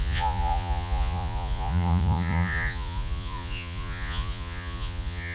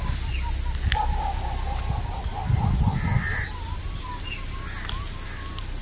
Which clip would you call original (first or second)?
second